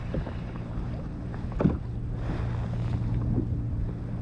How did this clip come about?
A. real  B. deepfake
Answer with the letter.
A